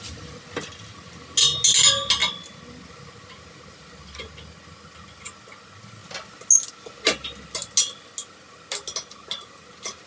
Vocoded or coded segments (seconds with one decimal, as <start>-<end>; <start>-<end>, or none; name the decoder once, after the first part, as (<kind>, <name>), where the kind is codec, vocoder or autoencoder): none